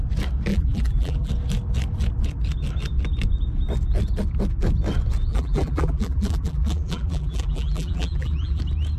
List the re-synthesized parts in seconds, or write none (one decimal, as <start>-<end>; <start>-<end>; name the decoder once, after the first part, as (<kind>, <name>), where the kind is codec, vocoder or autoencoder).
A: 0.5-1.3 (vocoder, BigVGAN v2); 5.3-8.6